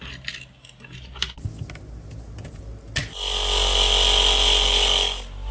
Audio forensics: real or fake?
real